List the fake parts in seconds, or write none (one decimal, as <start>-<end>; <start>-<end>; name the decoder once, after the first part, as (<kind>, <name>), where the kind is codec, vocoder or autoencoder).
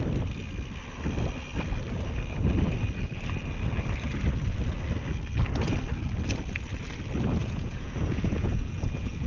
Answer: 7.4-9.3 (vocoder, Vocos)